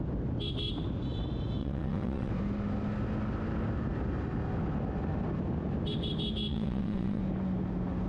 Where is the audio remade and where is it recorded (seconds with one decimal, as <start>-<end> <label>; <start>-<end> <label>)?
0.0-1.6 recorded; 1.6-2.3 remade; 2.3-6.5 recorded; 6.5-7.2 remade; 7.2-8.1 recorded

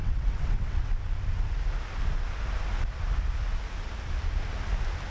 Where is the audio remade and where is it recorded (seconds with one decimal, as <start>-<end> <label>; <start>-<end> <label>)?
0.0-0.9 remade; 0.9-5.1 recorded

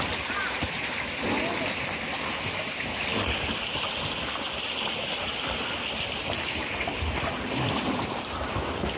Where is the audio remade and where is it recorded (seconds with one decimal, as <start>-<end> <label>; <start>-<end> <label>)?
0.0-9.0 recorded

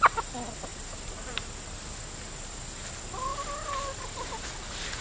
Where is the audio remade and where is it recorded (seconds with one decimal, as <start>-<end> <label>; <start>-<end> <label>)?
0.0-5.0 recorded

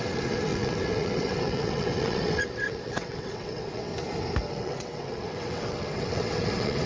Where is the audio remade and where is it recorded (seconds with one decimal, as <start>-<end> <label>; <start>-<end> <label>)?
0.0-3.9 remade; 3.9-4.5 recorded; 4.5-6.9 remade